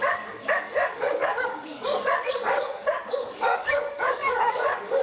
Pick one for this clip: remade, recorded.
remade